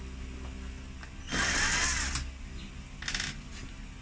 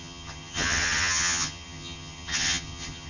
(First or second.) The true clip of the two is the first